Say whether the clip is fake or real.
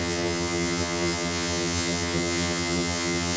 fake